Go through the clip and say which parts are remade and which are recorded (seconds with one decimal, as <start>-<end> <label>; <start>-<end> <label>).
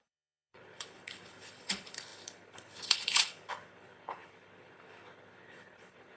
0.0-6.2 remade